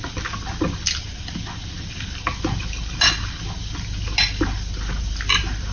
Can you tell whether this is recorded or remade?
recorded